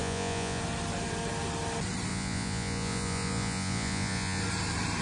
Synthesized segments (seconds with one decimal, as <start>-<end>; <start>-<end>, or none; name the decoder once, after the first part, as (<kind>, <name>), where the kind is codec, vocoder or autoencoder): 0.0-0.6 (vocoder, Vocos); 2.1-4.4